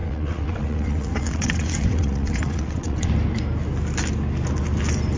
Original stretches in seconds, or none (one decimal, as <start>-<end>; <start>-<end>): 3.1-5.2